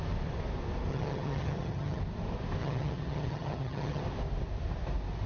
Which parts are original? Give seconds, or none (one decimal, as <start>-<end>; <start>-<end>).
0.0-0.9; 2.0-2.6; 4.0-5.3